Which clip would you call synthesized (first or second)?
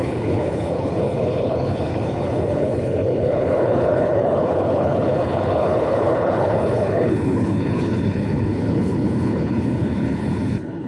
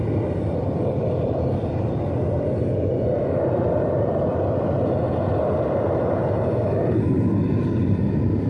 first